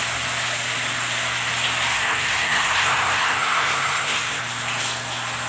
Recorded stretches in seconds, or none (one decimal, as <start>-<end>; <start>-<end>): 0.0-1.9; 4.4-5.5